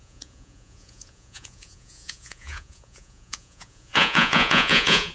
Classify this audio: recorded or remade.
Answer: remade